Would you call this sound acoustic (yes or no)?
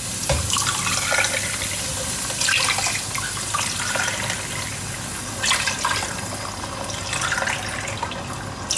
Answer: yes